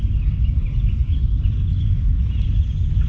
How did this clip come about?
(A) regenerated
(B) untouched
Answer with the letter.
B